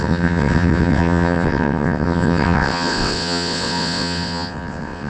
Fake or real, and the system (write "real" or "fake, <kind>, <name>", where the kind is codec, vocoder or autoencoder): fake, vocoder, WaveNeXt